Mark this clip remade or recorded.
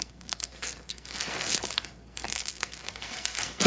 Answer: remade